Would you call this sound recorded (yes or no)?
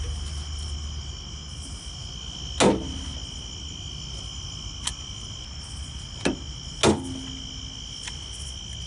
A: yes